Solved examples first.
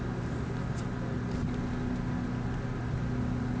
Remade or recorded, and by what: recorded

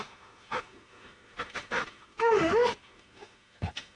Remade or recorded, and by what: remade, autoencoder, DAC-VAE